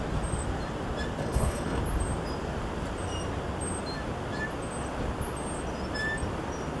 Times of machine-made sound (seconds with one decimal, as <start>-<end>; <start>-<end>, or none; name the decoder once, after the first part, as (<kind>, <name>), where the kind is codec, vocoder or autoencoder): 1.2-1.8 (codec, HILCodec)